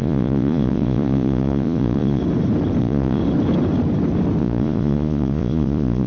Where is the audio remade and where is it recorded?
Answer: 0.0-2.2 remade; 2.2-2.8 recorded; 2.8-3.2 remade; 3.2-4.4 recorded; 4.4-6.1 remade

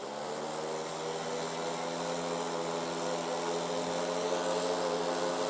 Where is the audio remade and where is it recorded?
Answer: 0.0-5.5 recorded

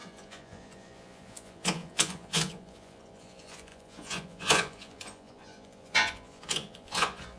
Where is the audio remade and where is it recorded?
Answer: 0.0-7.4 remade

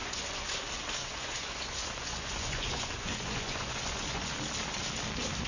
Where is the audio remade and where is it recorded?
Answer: 0.0-0.6 remade; 0.6-1.0 recorded; 1.0-4.3 remade; 4.3-5.5 recorded